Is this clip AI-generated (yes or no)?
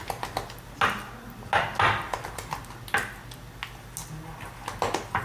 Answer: no